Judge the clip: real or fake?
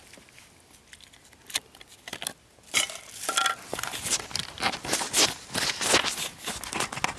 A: real